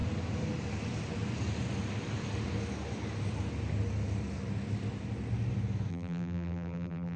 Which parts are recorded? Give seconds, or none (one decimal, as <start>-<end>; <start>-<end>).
0.0-5.9